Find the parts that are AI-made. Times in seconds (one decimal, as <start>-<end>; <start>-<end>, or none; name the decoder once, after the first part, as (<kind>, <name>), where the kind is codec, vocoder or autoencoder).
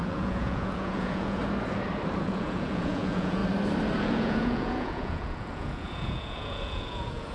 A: 0.0-1.4 (vocoder, Vocos); 2.2-3.4; 4.0-7.3